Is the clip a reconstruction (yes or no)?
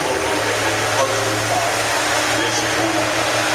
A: no